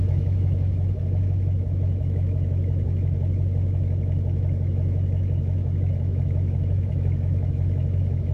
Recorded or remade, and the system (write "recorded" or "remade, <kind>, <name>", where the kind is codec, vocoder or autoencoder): remade, autoencoder, DAC-VAE